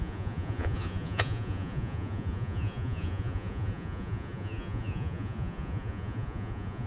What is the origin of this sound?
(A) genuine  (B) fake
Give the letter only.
B